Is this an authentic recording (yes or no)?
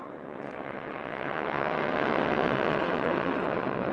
no